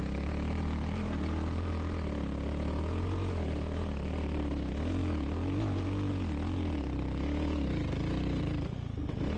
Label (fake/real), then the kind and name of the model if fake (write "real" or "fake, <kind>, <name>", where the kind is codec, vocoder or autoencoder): real